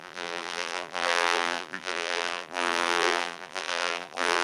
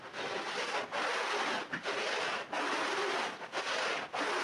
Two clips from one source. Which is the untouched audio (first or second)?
second